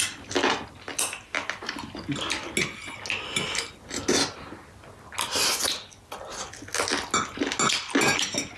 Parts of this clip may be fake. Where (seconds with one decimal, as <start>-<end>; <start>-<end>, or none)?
none